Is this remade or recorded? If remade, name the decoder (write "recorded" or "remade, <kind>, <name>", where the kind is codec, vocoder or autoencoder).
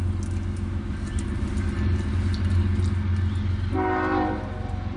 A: recorded